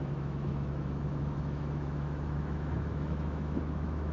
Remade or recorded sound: remade